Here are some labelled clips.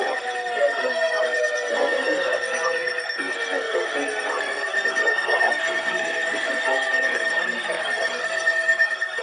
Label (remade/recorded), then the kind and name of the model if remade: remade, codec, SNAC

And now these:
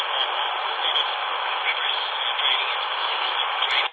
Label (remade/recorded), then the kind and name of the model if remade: recorded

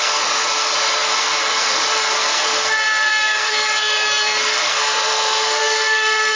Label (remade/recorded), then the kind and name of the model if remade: remade, codec, SNAC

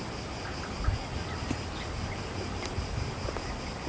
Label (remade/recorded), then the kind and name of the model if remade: recorded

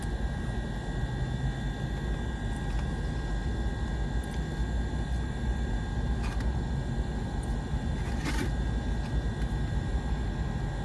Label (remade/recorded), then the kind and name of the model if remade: recorded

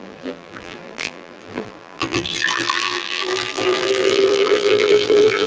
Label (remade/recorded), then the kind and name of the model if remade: remade, vocoder, BigVGAN v2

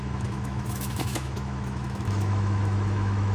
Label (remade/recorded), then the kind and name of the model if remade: remade, autoencoder, DAC-VAE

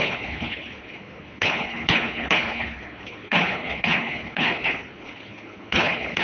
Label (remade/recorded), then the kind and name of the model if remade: remade, codec, HILCodec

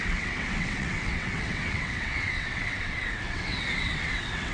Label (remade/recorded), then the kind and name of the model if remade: remade, vocoder, WaveNeXt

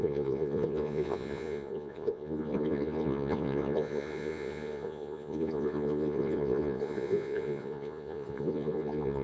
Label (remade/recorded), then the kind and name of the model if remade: remade, vocoder, Vocos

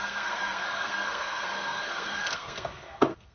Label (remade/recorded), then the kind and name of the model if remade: remade, codec, SNAC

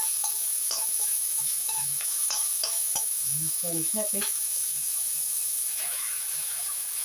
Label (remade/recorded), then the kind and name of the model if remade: remade, autoencoder, DAC-VAE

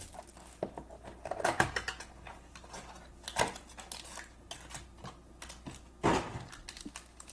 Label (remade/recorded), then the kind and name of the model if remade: recorded